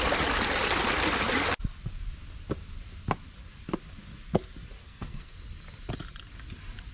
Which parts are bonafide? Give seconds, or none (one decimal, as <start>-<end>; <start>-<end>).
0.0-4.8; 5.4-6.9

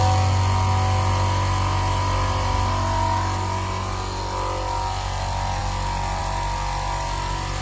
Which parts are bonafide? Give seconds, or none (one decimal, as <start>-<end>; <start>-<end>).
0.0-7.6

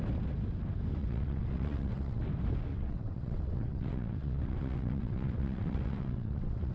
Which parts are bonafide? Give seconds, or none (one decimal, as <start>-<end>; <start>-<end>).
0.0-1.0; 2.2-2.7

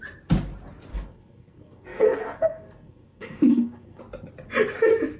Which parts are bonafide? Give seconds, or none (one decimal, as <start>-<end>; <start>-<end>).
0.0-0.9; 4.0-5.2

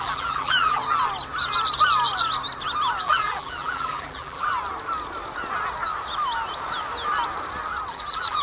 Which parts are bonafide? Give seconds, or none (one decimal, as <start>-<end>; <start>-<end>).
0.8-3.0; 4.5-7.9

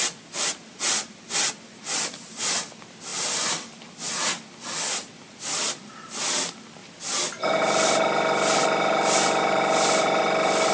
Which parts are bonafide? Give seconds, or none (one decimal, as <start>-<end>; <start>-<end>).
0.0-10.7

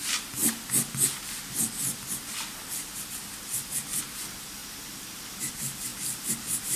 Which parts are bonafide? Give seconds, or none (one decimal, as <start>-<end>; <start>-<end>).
4.6-5.5